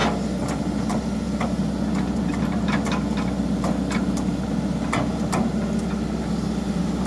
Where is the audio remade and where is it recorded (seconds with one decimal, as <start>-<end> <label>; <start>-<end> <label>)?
0.0-7.1 recorded